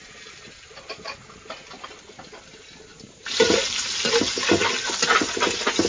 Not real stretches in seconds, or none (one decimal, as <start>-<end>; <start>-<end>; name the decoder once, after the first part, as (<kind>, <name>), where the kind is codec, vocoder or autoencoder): 2.9-4.2 (vocoder, BigVGAN v2)